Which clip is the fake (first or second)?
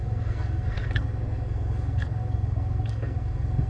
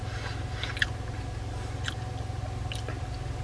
first